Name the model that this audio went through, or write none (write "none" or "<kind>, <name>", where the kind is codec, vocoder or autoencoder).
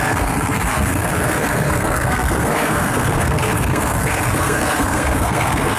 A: codec, SNAC